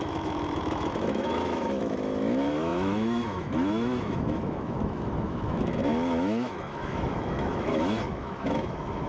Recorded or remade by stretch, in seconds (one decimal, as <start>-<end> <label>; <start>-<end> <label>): 0.0-9.1 remade